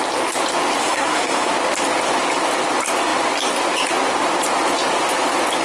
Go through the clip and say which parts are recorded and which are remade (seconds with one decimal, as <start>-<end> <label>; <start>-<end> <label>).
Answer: 0.0-0.8 recorded; 0.8-1.5 remade; 1.5-5.6 recorded

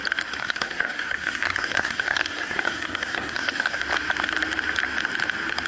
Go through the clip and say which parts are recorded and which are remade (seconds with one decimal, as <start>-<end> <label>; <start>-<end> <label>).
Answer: 0.0-0.4 recorded; 0.4-3.8 remade; 3.8-5.7 recorded

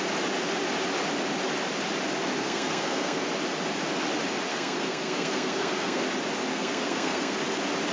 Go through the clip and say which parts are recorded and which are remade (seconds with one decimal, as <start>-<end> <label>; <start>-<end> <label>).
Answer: 0.0-2.4 recorded; 2.4-3.2 remade; 3.2-4.5 recorded; 4.5-6.0 remade; 6.0-6.5 recorded; 6.5-7.4 remade; 7.4-7.9 recorded

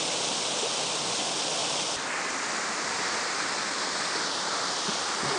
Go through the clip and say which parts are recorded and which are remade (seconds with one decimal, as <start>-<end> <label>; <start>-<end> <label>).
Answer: 0.0-5.4 recorded